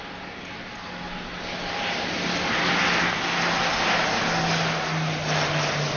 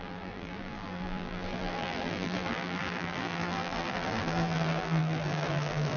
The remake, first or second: second